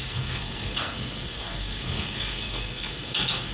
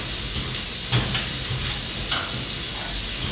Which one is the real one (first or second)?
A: second